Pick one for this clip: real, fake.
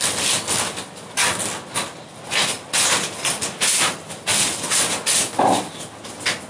real